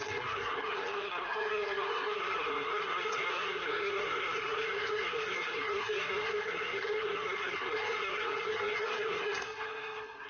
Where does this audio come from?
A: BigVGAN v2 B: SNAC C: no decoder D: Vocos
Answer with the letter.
B